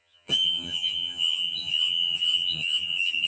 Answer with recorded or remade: remade